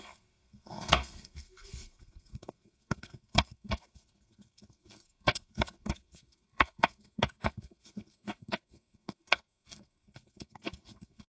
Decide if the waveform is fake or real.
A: fake